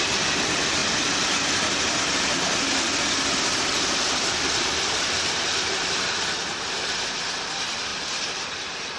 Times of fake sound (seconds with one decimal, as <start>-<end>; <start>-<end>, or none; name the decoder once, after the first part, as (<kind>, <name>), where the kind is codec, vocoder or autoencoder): 0.0-0.8 (vocoder, BigVGAN v2); 3.9-9.0